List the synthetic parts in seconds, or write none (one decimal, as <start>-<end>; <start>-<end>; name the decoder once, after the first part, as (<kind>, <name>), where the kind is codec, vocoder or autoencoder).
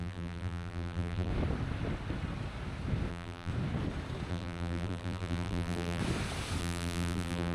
0.0-1.3 (vocoder, BigVGAN v2); 3.1-3.5; 4.3-6.0; 6.6-7.5